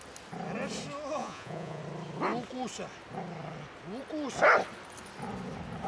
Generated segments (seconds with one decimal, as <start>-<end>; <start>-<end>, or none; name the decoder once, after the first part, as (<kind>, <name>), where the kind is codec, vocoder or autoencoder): 1.2-1.8 (vocoder, Vocos)